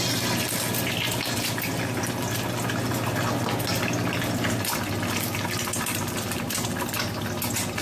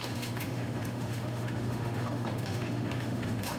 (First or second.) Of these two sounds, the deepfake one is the second